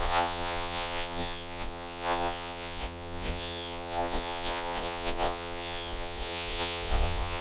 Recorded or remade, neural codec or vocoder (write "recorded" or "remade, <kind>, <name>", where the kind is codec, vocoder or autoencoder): remade, vocoder, Vocos